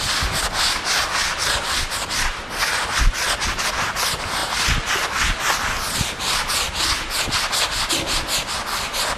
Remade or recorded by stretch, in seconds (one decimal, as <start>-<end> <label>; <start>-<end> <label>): 0.0-9.2 recorded